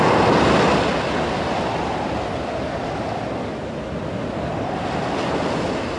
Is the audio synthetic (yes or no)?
no